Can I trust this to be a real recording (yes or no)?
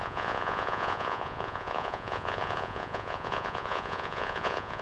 no